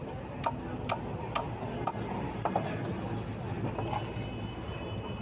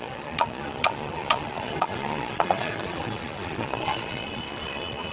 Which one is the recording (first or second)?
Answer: first